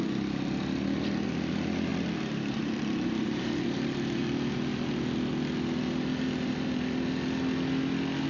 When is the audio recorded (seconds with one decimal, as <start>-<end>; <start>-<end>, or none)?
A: 0.0-1.9; 4.2-8.3